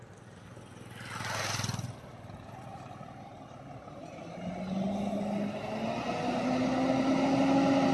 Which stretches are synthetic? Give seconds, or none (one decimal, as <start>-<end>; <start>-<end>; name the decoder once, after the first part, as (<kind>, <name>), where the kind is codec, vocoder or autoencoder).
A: 2.7-3.4 (vocoder, BigVGAN v2)